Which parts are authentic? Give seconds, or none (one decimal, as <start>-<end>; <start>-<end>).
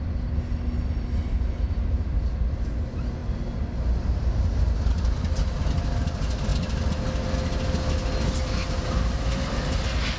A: 0.0-10.2